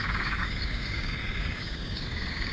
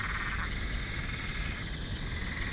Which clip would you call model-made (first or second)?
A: first